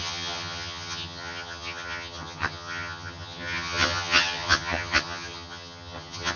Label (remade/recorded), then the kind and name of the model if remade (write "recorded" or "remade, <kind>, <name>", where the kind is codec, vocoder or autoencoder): remade, vocoder, HiFi-GAN